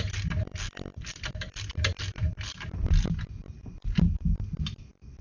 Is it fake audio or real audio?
real